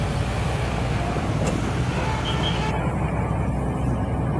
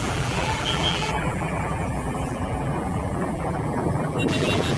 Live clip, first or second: first